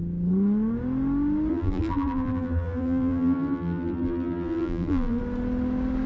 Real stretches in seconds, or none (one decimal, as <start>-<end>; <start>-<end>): 0.0-1.5; 5.2-6.1